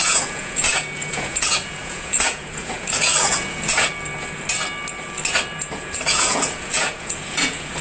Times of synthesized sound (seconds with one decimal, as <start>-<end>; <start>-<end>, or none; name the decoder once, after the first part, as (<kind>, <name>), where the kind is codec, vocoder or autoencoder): 0.0-3.9 (vocoder, Vocos); 5.6-7.8